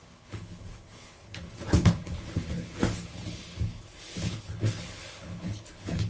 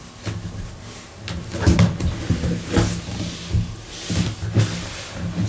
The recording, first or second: second